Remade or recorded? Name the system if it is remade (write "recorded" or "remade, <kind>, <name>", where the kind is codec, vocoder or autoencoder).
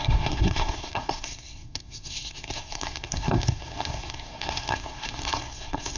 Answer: remade, codec, SNAC